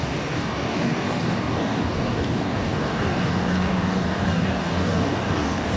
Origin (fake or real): fake